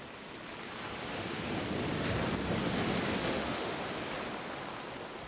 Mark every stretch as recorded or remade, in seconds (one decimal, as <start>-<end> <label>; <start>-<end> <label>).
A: 0.0-1.1 recorded; 1.1-1.6 remade; 1.6-3.2 recorded; 3.2-3.8 remade; 3.8-5.3 recorded